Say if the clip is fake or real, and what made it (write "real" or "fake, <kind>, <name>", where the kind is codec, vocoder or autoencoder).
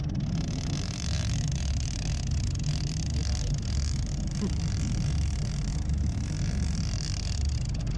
real